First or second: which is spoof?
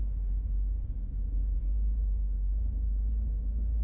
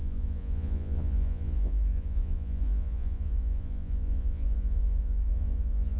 second